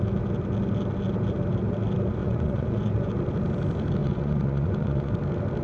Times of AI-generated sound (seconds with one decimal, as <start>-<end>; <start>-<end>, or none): 2.2-3.1; 4.0-5.1